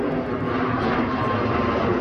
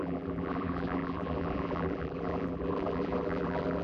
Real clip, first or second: first